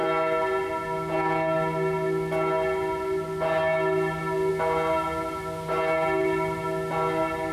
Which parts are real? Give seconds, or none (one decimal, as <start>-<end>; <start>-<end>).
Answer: 0.0-7.5